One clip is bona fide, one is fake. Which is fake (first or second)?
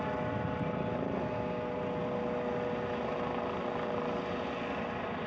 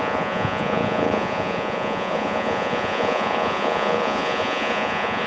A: second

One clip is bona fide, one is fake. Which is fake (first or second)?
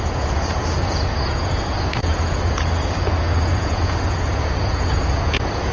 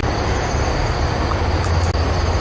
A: first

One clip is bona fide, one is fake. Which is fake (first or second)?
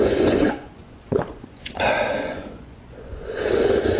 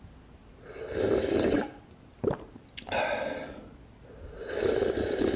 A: first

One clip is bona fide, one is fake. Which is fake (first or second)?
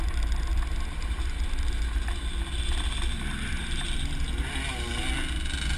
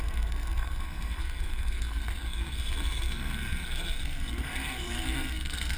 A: second